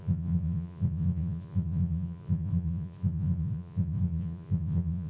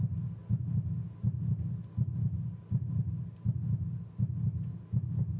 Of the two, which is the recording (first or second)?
second